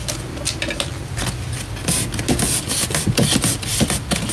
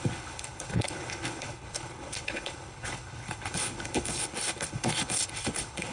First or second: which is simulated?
second